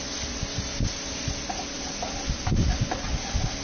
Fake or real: real